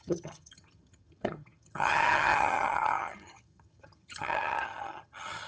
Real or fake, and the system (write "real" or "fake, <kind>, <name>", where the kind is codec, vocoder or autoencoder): fake, vocoder, HiFi-GAN